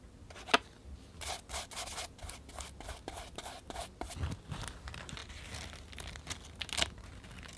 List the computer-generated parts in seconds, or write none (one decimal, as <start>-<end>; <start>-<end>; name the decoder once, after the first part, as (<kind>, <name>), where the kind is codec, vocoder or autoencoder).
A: none